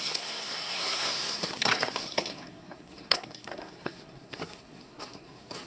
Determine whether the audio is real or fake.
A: fake